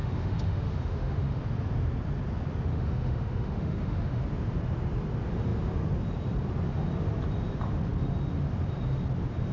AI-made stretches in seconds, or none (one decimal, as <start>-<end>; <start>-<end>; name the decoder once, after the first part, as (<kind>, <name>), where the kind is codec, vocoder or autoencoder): 0.0-1.4 (autoencoder, DAC-VAE); 2.7-4.2